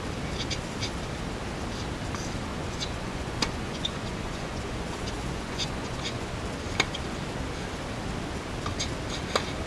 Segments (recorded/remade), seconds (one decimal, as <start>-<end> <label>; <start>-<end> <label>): 0.0-2.5 recorded; 2.5-6.3 remade; 6.3-9.7 recorded